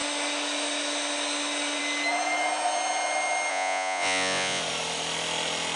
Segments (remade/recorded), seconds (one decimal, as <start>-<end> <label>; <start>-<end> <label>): 0.0-3.5 recorded; 3.5-4.6 remade; 4.6-5.8 recorded